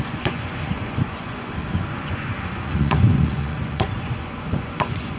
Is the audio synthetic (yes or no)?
yes